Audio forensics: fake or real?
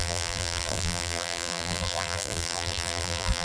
fake